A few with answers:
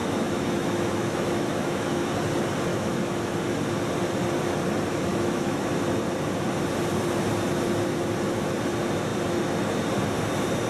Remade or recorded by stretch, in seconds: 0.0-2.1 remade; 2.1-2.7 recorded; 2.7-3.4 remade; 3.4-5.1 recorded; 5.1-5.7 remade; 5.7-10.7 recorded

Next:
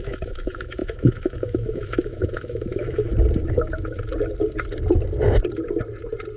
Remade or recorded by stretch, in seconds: 0.0-3.1 remade; 3.1-6.4 recorded